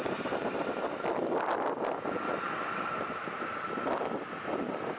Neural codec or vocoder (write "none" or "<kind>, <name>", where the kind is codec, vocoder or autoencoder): none